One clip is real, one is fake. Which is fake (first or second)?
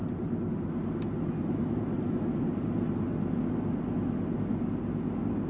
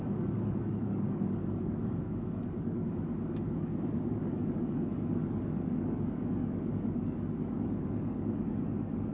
second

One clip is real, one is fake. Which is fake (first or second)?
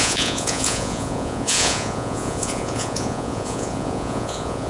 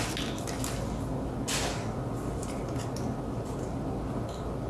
first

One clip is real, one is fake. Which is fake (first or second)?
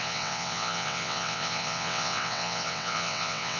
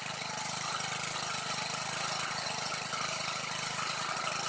first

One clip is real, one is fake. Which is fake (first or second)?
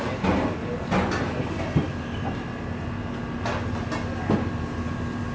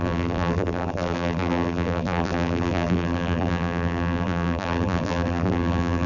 second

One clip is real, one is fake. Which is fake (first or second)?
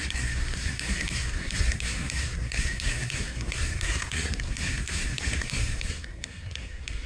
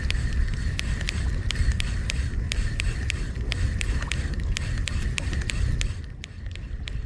first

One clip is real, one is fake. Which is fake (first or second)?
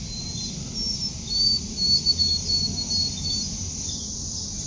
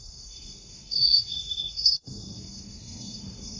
second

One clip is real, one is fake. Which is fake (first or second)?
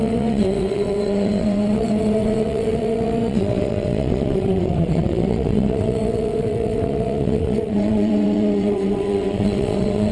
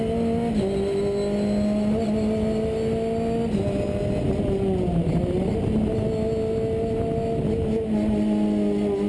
first